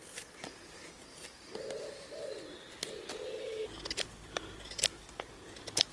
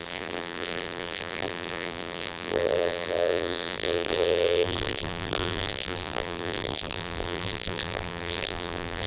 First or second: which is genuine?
first